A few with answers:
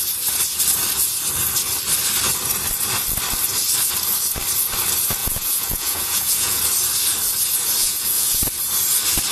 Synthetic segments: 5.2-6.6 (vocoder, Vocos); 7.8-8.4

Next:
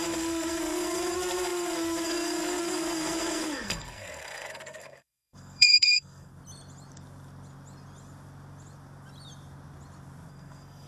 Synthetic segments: 0.0-6.3 (codec, SNAC); 10.3-10.9

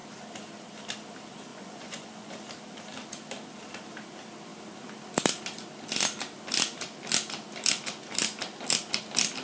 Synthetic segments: 1.5-2.3 (vocoder, Vocos)

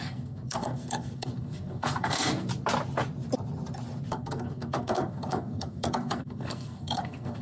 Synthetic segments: 0.0-2.5 (codec, SNAC); 4.1-7.4

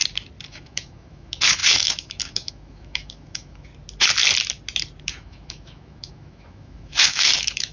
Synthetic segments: 0.5-3.7 (autoencoder, DAC-VAE); 5.0-7.7

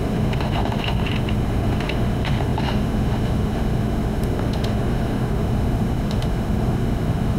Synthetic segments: 0.0-7.4 (autoencoder, DAC-VAE)